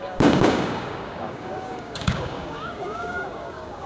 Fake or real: fake